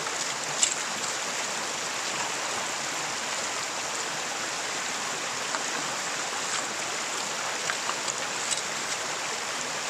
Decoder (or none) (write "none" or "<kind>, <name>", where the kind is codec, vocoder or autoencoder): none